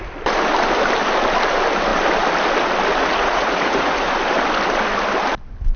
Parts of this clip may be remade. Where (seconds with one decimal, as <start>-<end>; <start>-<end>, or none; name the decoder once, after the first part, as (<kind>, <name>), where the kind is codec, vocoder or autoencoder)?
3.0-4.1 (vocoder, Vocos)